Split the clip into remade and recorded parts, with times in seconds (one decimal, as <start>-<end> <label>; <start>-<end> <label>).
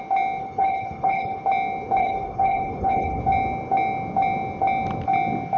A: 0.0-0.4 recorded; 0.4-1.4 remade; 1.4-2.0 recorded; 2.0-3.2 remade; 3.2-5.6 recorded